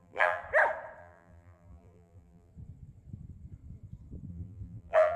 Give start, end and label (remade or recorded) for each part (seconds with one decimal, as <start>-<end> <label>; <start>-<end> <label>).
0.0-0.4 remade; 0.4-1.0 recorded; 1.0-2.5 remade; 2.5-4.3 recorded; 4.3-5.2 remade